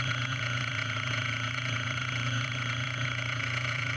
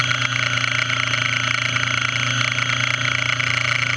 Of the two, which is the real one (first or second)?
second